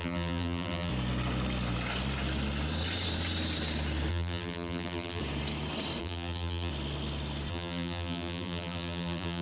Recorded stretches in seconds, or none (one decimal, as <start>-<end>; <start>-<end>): 0.9-4.1; 5.2-6.0; 6.7-7.5